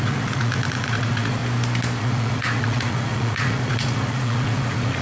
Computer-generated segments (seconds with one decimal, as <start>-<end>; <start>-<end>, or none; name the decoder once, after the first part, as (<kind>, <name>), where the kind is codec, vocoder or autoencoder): 0.0-1.4 (vocoder, Vocos); 2.0-5.0

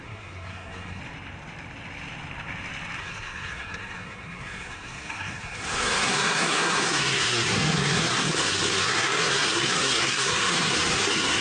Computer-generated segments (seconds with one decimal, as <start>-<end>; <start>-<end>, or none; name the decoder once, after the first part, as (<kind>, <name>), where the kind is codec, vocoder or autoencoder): 0.0-1.0 (codec, SNAC); 3.0-11.4

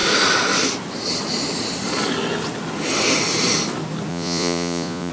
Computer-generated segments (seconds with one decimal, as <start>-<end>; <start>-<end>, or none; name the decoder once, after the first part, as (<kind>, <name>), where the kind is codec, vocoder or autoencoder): 4.1-5.1 (vocoder, Vocos)